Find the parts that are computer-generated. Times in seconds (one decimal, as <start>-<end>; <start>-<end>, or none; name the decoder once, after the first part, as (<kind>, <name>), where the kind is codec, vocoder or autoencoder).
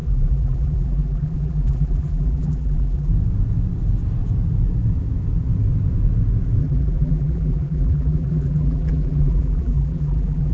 0.0-3.1 (vocoder, BigVGAN v2); 6.6-10.5